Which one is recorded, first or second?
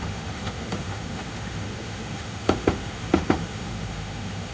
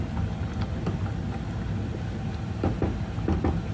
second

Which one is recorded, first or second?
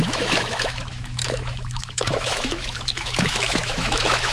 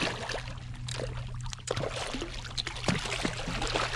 second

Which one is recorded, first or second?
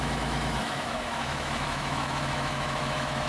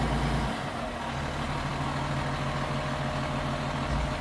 second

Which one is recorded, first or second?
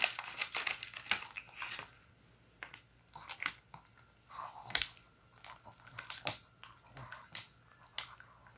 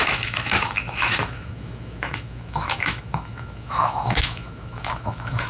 first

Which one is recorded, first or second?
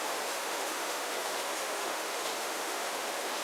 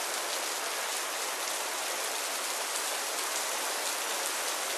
second